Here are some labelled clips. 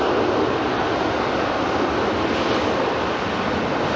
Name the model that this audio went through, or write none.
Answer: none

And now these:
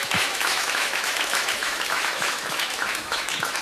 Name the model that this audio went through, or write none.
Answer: autoencoder, DAC-VAE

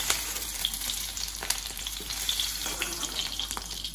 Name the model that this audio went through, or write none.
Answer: vocoder, BigVGAN v2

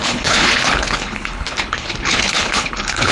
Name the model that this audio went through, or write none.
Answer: codec, HILCodec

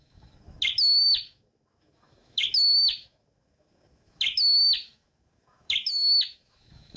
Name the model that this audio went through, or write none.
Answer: autoencoder, DAC-VAE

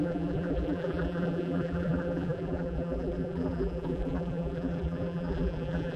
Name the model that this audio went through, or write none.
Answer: vocoder, BigVGAN v2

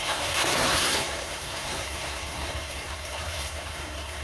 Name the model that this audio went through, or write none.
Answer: codec, SNAC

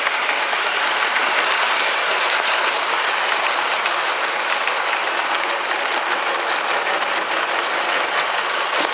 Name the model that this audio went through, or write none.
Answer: none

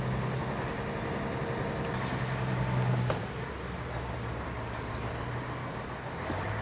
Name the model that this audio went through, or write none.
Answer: none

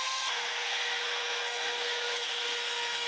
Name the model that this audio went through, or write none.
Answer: codec, SNAC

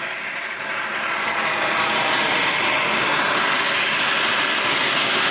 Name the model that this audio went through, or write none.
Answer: none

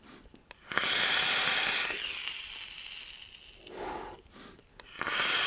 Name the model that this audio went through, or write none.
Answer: none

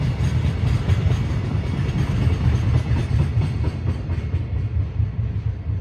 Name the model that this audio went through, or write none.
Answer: none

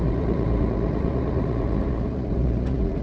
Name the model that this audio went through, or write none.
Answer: vocoder, Vocos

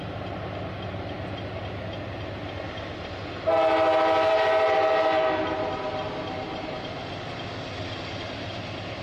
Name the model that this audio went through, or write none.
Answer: none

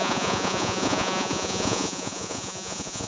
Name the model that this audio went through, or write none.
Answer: vocoder, Vocos